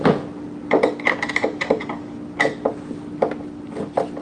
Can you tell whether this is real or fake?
real